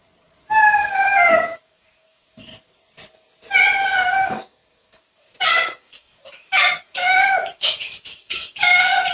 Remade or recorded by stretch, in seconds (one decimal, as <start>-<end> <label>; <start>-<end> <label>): 0.0-0.6 recorded; 0.6-2.5 remade; 2.5-4.0 recorded; 4.0-9.1 remade